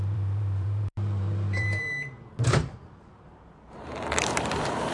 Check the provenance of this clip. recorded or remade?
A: remade